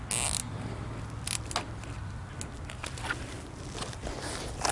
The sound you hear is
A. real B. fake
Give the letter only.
A